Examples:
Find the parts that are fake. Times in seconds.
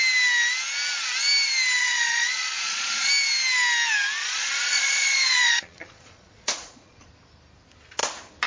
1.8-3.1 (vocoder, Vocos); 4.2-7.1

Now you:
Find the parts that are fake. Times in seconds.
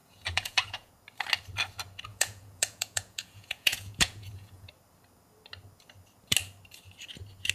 0.0-0.9 (vocoder, Vocos); 2.1-4.7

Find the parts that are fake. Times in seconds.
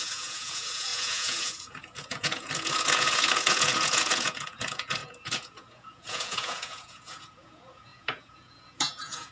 0.0-9.3 (vocoder, Vocos)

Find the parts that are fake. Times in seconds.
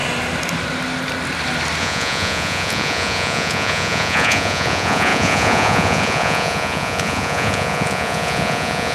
1.8-8.9 (vocoder, Vocos)